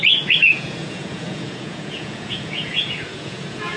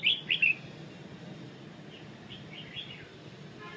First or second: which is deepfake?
first